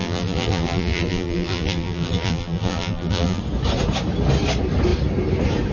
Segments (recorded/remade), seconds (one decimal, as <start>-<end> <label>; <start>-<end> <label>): 0.0-3.4 remade; 3.4-5.7 recorded